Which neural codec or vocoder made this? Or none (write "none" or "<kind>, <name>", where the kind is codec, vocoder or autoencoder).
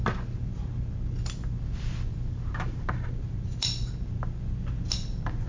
none